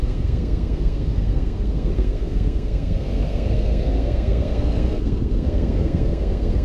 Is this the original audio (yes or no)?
no